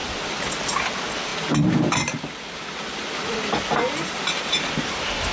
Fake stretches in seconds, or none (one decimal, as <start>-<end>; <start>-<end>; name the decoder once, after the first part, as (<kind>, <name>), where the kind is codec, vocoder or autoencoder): none